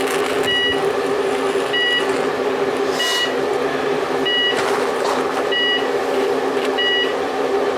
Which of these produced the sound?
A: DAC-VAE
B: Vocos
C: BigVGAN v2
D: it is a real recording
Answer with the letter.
D